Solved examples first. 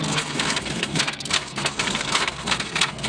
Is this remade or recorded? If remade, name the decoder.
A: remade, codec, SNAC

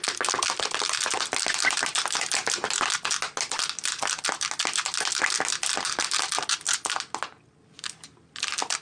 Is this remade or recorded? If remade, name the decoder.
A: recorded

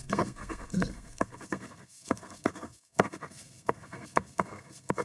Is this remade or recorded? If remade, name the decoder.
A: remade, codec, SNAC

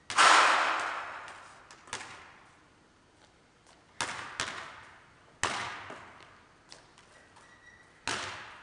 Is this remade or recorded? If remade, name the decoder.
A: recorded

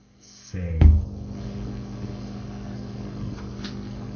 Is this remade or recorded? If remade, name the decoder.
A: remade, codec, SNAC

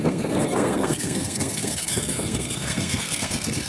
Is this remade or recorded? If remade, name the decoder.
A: remade, codec, SNAC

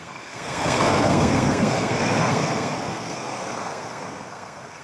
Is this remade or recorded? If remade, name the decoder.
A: remade, codec, SNAC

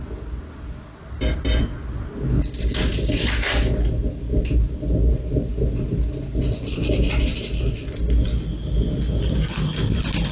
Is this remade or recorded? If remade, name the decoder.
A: recorded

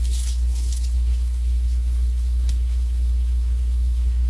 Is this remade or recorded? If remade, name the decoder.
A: remade, codec, SNAC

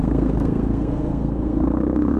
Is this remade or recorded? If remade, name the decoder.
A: remade, codec, SNAC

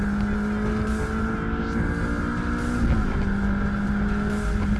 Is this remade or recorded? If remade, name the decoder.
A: recorded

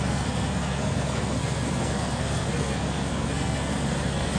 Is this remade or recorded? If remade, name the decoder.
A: remade, codec, SNAC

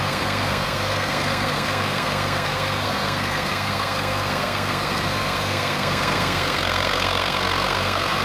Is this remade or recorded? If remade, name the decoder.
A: remade, codec, SNAC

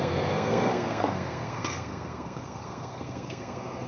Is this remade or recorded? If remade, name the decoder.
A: remade, codec, SNAC